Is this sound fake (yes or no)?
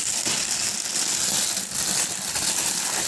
no